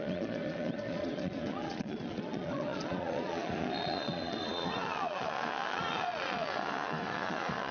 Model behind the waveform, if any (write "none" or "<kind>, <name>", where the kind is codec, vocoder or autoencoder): vocoder, Vocos